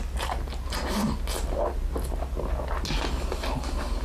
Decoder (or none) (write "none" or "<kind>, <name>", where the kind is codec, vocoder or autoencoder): none